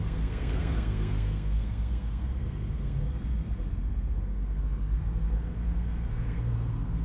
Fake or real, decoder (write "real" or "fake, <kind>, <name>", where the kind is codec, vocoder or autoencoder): fake, codec, SNAC